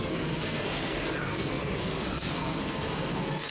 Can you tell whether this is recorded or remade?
remade